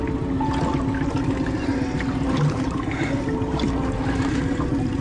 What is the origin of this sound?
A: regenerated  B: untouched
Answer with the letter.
B